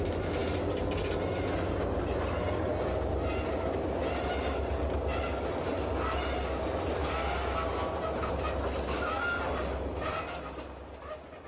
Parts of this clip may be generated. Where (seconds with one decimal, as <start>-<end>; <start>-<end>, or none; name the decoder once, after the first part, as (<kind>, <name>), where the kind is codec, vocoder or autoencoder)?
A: none